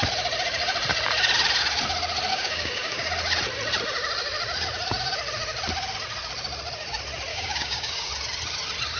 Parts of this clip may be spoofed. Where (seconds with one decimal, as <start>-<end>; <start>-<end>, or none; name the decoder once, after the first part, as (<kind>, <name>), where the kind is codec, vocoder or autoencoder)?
2.3-3.1 (codec, DAC); 7.3-8.1